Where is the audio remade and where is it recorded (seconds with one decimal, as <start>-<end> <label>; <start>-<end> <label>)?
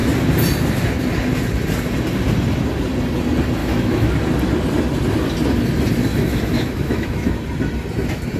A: 0.0-3.6 recorded; 3.6-4.1 remade; 4.1-6.1 recorded; 6.1-7.3 remade; 7.3-8.4 recorded